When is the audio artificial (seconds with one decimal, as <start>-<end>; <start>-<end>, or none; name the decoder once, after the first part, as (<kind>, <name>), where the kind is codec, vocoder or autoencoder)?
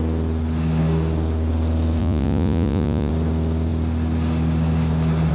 2.0-3.1 (vocoder, Vocos)